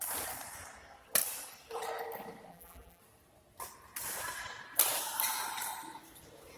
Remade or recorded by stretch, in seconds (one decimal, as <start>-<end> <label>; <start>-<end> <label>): 0.0-2.5 recorded; 2.5-3.0 remade; 3.0-6.6 recorded